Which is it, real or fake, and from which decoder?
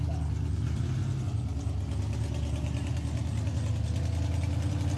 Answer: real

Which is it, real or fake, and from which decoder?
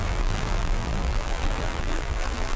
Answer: fake, vocoder, BigVGAN v2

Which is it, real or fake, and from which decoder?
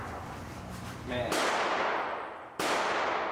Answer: real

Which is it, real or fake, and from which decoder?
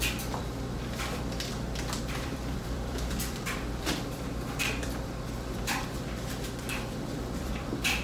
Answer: fake, vocoder, BigVGAN v2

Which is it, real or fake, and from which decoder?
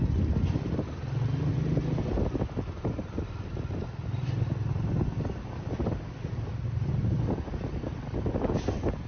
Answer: real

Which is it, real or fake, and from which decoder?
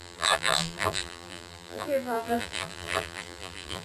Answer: fake, vocoder, BigVGAN v2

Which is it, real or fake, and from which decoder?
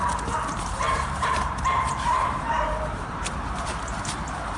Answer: fake, vocoder, BigVGAN v2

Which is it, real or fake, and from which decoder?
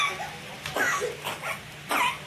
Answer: real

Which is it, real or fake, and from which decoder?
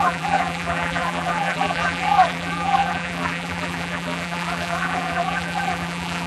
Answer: fake, vocoder, BigVGAN v2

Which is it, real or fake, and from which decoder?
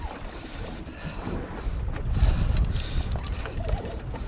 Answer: fake, vocoder, BigVGAN v2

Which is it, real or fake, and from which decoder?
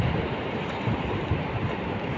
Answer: fake, vocoder, BigVGAN v2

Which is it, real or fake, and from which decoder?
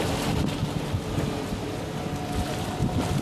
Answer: real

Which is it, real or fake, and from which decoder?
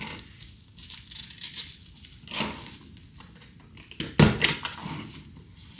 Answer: real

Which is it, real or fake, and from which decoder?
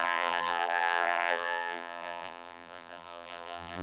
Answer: fake, vocoder, BigVGAN v2